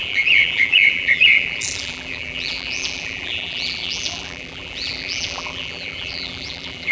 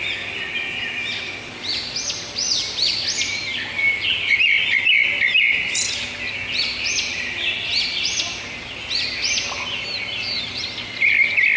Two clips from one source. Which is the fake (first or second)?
first